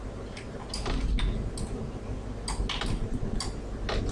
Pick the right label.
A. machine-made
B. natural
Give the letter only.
B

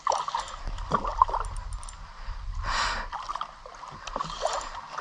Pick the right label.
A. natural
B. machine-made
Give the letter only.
A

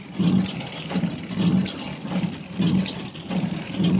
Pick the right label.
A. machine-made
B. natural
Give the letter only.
B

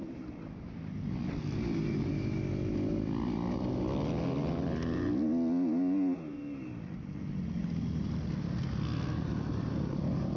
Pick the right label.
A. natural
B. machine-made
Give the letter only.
A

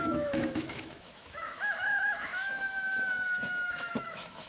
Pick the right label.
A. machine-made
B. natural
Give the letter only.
A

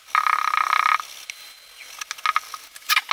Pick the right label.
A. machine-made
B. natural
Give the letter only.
B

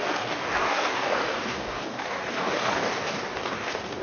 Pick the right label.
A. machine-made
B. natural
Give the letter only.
A